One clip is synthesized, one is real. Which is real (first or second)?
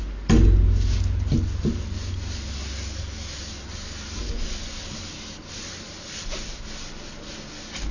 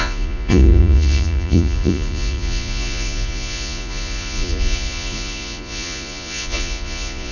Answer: first